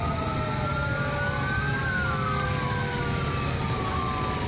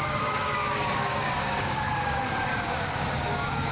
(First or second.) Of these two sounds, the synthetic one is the second